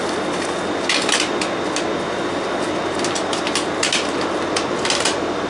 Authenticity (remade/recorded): recorded